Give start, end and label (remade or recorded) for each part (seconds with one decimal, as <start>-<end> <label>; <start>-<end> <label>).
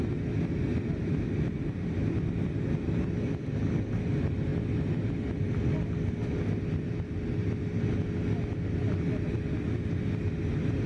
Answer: 0.0-10.9 recorded